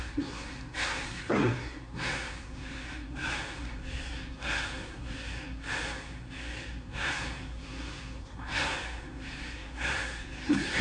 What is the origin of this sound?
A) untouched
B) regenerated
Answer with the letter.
B